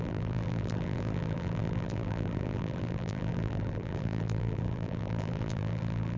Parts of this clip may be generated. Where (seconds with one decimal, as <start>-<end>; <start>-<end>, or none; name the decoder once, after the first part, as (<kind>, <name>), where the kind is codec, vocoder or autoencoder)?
0.0-6.2 (vocoder, BigVGAN v2)